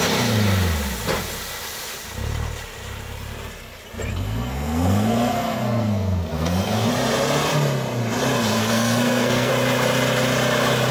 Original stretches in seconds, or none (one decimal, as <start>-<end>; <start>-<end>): 0.0-4.1; 6.9-8.6; 9.5-10.9